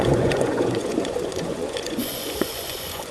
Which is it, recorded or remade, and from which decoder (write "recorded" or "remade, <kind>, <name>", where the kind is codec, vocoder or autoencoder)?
remade, vocoder, Vocos